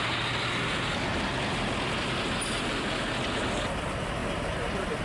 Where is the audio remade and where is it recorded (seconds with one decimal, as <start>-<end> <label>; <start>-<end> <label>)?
0.0-5.0 recorded

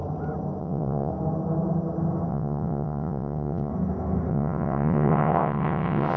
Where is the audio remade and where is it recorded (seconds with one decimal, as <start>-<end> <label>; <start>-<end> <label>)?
0.0-0.6 recorded; 0.6-1.1 remade; 1.1-2.3 recorded; 2.3-3.7 remade; 3.7-4.3 recorded; 4.3-6.2 remade

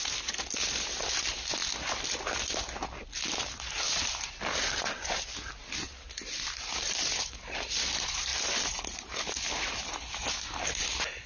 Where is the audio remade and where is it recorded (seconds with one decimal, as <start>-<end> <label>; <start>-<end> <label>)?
0.0-11.3 recorded

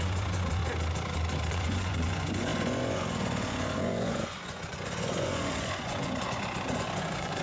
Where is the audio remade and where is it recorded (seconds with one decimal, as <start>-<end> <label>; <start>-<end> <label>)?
0.0-0.6 remade; 0.6-1.5 recorded; 1.5-7.4 remade

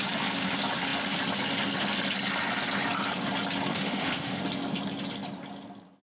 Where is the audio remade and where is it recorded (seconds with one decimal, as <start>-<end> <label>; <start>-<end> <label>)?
0.0-3.7 recorded; 3.7-4.4 remade; 4.4-6.1 recorded